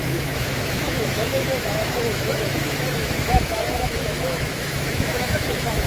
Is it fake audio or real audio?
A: fake